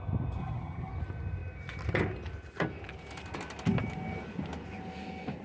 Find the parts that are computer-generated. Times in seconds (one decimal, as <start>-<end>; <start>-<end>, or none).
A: 0.4-0.9